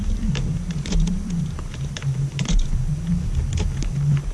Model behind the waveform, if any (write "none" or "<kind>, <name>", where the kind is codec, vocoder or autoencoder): vocoder, BigVGAN v2